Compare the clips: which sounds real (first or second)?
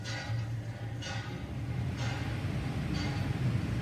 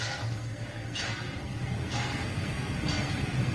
first